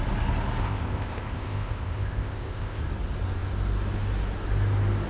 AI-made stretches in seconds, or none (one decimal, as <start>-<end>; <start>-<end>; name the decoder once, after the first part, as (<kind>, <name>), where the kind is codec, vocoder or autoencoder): 0.6-2.8 (codec, ZipCodec)